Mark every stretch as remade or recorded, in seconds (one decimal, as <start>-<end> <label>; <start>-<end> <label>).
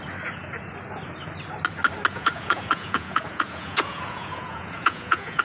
0.0-2.1 recorded; 2.1-5.4 remade